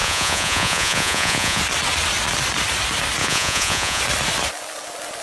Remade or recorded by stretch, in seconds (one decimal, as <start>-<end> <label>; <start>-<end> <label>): 0.0-1.6 remade; 1.6-3.2 recorded; 3.2-4.0 remade; 4.0-5.2 recorded